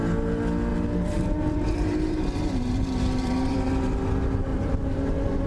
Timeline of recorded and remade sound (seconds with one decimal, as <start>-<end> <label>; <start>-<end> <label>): 0.0-0.7 recorded; 0.7-4.0 remade; 4.0-4.5 recorded; 4.5-5.5 remade